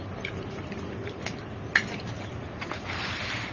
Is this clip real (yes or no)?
yes